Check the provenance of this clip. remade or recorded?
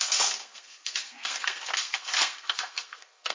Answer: remade